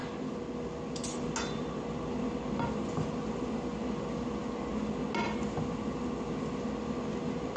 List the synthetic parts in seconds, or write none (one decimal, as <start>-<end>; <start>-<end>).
none